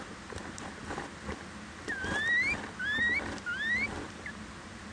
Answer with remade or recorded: recorded